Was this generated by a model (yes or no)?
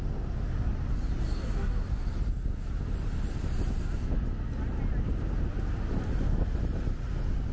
no